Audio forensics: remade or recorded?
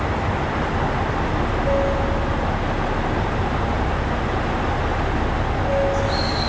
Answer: recorded